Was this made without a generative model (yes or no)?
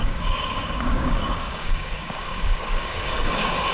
no